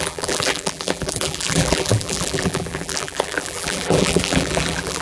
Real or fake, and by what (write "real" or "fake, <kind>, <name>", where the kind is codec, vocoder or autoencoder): fake, vocoder, BigVGAN v2